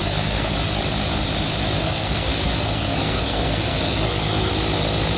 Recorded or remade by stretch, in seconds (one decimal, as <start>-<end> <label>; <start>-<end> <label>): 0.0-0.5 remade; 0.5-1.8 recorded; 1.8-4.5 remade; 4.5-5.2 recorded